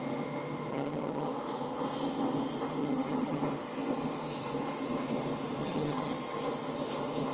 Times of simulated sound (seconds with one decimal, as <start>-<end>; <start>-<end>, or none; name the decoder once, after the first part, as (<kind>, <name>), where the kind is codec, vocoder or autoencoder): 0.7-1.3 (vocoder, HiFi-GAN); 2.8-3.4; 5.6-6.1